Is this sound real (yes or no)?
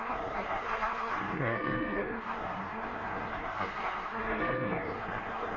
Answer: no